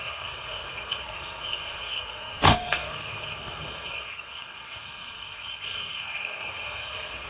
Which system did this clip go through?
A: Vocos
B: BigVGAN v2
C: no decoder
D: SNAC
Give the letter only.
D